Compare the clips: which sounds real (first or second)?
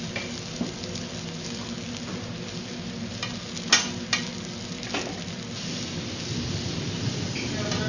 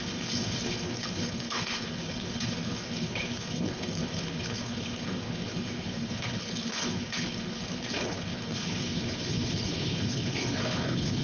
first